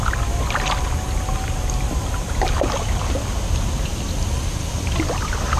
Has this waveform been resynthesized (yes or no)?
yes